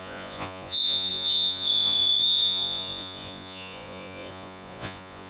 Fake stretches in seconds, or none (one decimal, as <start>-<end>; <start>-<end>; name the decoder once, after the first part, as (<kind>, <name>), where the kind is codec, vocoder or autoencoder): 0.0-5.3 (vocoder, Vocos)